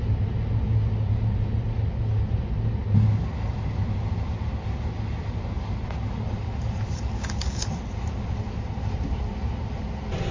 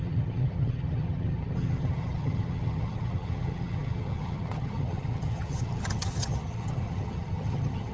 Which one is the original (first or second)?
first